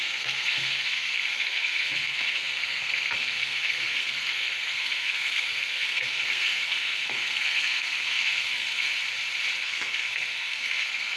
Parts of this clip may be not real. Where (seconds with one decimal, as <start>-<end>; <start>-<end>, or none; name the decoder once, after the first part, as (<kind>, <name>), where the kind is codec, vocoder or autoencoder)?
0.0-8.9 (codec, SNAC); 9.6-11.2